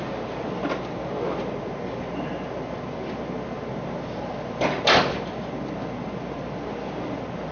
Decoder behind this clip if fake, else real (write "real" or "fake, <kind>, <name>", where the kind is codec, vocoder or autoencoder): real